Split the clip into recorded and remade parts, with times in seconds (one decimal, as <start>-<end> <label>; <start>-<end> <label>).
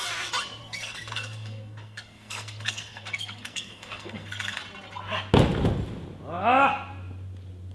0.0-0.6 recorded; 0.6-4.6 remade; 4.6-7.7 recorded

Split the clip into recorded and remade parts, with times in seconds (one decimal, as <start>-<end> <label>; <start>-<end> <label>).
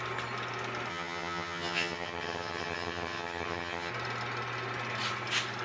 0.0-0.9 recorded; 0.9-3.9 remade; 3.9-5.6 recorded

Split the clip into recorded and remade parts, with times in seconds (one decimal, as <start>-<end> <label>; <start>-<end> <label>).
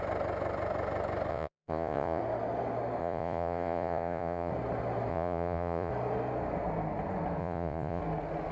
0.0-1.3 recorded; 1.3-2.2 remade; 2.2-3.0 recorded; 3.0-4.5 remade; 4.5-5.1 recorded; 5.1-5.9 remade; 5.9-7.4 recorded; 7.4-8.0 remade; 8.0-8.5 recorded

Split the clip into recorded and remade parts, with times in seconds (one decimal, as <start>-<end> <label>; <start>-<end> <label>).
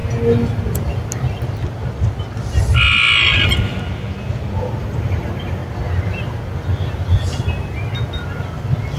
0.0-4.8 recorded; 4.8-5.6 remade; 5.6-9.0 recorded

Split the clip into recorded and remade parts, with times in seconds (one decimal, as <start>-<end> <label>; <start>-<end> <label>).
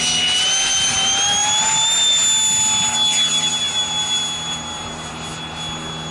0.0-6.1 recorded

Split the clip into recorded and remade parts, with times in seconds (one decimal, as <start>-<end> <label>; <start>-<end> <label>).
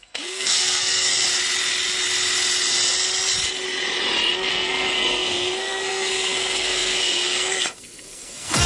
0.0-1.1 remade; 1.1-4.5 recorded; 4.5-8.7 remade